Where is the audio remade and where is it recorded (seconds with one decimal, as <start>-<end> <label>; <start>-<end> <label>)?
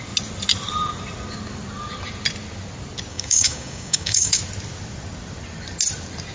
0.0-3.1 recorded; 3.1-4.4 remade; 4.4-6.3 recorded